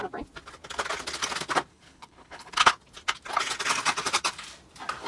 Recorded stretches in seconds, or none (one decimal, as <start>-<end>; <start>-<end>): 0.0-1.7; 2.7-5.1